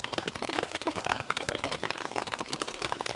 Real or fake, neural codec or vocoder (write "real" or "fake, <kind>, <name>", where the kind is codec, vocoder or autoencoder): fake, codec, SNAC